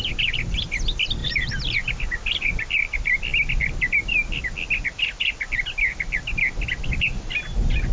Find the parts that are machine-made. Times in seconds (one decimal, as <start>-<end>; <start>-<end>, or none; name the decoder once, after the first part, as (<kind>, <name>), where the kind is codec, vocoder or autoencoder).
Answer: 1.2-2.0 (vocoder, BigVGAN v2)